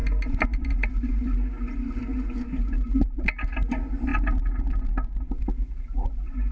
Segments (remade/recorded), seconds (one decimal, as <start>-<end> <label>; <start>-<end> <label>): 0.0-6.5 recorded